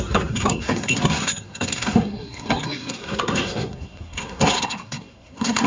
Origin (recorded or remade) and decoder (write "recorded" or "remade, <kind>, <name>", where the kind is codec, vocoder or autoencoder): remade, codec, SNAC